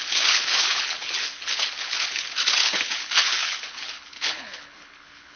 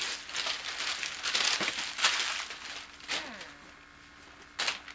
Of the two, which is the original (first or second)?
second